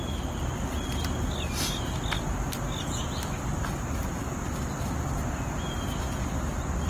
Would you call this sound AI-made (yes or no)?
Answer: no